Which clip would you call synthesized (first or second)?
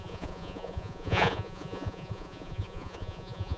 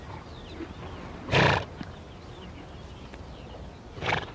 first